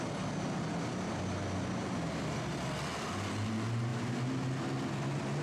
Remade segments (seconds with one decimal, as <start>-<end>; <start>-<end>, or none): none